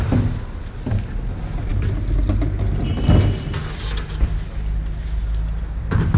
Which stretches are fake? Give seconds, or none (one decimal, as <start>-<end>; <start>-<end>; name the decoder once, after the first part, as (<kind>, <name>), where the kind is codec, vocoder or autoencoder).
none